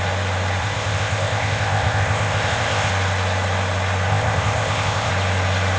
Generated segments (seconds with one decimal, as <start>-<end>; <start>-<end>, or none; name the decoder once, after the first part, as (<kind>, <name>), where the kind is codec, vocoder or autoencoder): 0.6-2.9 (codec, ZipCodec); 4.1-5.1